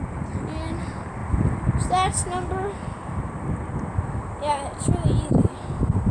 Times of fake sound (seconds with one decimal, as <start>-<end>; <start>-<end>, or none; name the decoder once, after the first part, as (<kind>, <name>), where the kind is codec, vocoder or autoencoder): 1.2-4.9 (vocoder, BigVGAN v2)